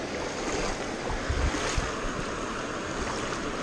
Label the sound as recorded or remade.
recorded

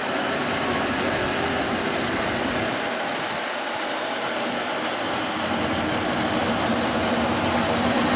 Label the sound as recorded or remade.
recorded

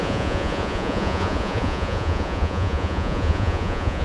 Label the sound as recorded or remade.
remade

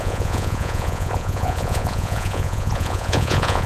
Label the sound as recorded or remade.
remade